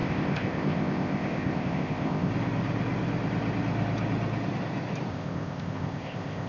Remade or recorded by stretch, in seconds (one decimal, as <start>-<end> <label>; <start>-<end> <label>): 0.0-2.3 remade; 2.3-5.1 recorded; 5.1-6.5 remade